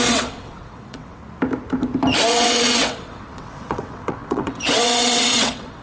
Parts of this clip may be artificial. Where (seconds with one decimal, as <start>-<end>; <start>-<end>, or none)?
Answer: 0.0-1.2; 2.3-5.8